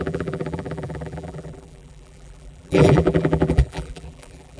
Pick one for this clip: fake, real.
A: fake